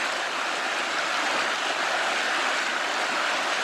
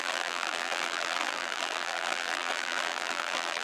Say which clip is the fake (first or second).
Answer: second